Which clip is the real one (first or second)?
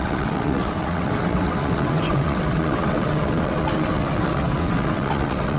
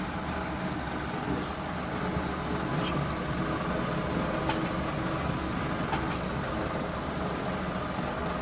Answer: second